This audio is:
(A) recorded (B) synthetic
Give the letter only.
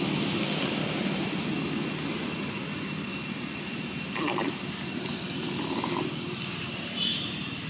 A